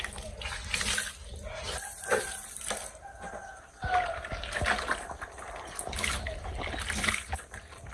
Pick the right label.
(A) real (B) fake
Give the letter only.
A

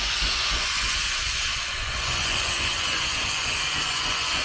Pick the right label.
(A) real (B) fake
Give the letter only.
B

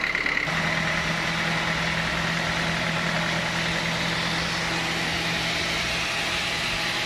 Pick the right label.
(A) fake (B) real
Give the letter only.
B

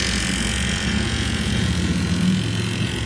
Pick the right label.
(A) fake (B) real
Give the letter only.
A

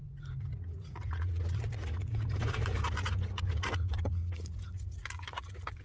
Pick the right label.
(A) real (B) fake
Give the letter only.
B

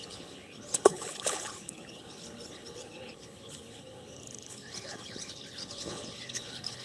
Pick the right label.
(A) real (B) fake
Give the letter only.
B